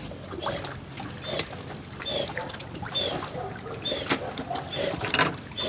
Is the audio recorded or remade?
recorded